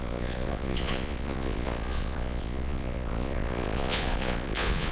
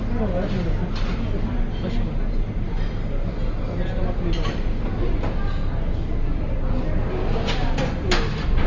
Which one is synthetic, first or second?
first